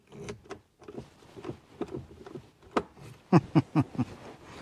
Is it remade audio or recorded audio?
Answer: recorded